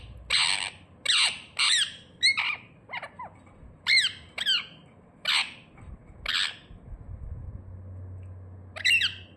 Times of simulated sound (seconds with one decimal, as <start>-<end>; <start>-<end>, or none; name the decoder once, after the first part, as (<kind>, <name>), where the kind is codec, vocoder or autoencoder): none